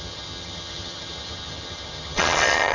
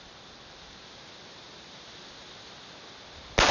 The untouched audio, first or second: second